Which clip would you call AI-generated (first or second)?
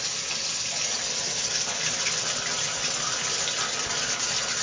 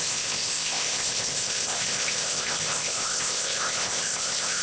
second